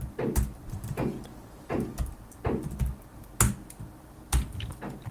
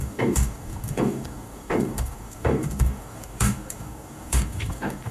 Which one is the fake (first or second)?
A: second